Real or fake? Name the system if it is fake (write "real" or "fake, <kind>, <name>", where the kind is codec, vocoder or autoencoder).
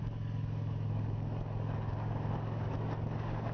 fake, codec, DAC